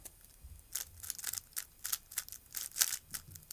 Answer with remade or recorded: recorded